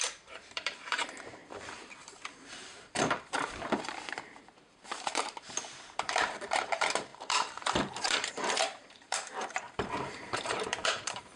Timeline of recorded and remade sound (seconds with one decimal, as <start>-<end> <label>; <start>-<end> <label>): 0.0-11.4 remade